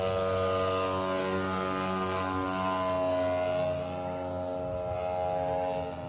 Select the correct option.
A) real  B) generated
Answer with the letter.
A